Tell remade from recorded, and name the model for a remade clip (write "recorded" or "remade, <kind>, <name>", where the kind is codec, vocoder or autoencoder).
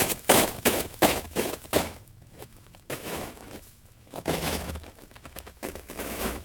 remade, autoencoder, DAC-VAE